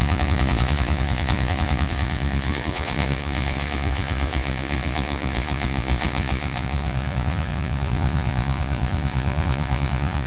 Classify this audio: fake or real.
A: fake